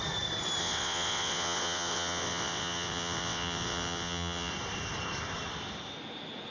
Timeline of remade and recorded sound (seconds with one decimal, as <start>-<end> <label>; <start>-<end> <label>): 0.0-0.6 recorded; 0.6-4.5 remade; 4.5-6.5 recorded